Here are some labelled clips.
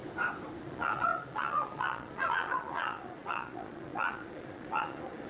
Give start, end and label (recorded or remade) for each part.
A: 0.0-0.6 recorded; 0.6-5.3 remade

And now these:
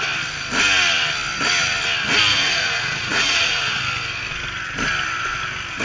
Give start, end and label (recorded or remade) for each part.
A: 0.0-2.3 recorded; 2.3-3.8 remade; 3.8-5.8 recorded

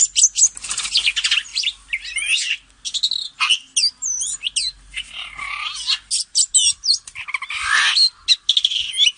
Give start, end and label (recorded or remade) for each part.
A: 0.0-9.2 recorded

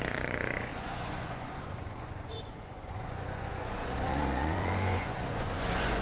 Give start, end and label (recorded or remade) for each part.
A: 0.0-6.0 remade

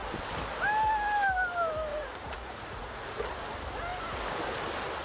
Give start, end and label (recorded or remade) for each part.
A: 0.0-1.9 recorded; 1.9-3.2 remade; 3.2-5.0 recorded